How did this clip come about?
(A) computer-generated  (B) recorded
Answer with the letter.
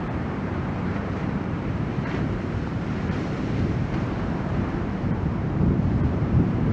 A